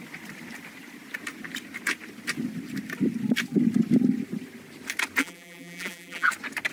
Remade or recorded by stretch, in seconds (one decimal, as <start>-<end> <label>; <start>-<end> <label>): 0.0-5.2 recorded; 5.2-6.3 remade; 6.3-6.7 recorded